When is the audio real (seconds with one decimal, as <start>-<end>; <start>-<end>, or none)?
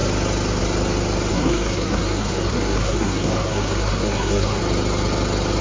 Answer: 0.0-1.3; 4.6-5.6